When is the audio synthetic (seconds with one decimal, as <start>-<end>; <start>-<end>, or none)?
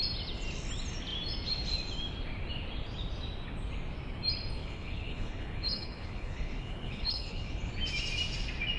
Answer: 4.6-7.7